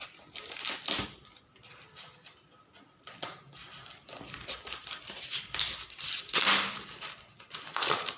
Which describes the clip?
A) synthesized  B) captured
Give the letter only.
B